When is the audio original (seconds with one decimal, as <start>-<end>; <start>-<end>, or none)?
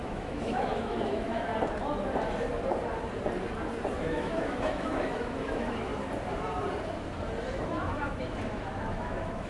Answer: 1.5-4.0; 5.9-7.5